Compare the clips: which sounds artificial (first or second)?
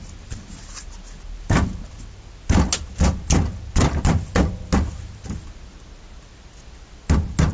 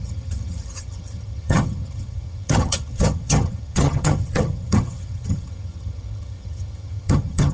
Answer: second